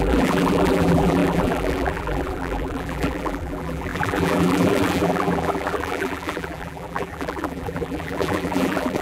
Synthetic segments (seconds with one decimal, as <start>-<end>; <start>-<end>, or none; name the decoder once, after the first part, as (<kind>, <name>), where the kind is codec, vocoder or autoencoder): 0.0-9.0 (vocoder, BigVGAN v2)